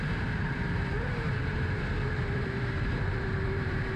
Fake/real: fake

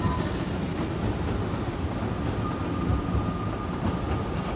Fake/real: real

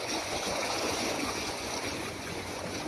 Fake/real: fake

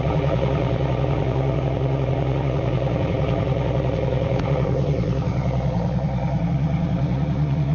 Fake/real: fake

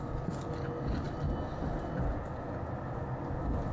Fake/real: real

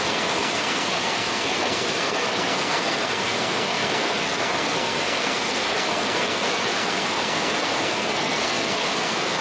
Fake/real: fake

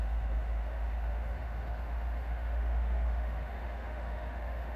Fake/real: fake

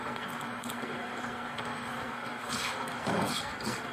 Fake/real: fake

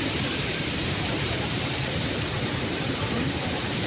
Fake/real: fake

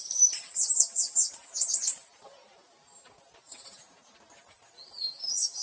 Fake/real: real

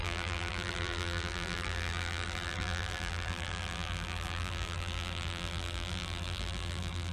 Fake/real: fake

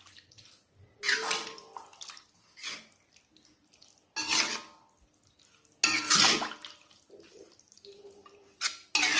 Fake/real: real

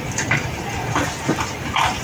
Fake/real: fake